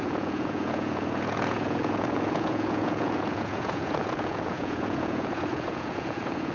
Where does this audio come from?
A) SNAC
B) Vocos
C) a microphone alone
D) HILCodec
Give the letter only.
B